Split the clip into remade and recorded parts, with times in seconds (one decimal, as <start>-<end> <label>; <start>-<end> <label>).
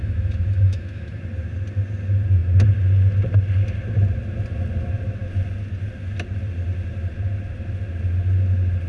0.0-1.2 remade; 1.2-8.9 recorded